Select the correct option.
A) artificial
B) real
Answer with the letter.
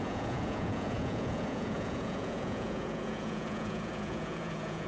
A